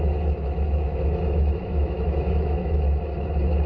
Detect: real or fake fake